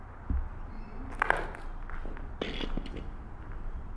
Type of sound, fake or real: real